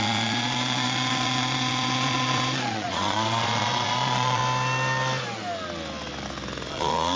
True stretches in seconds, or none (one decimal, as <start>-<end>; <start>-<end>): 4.4-6.7